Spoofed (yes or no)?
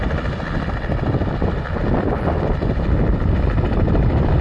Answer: yes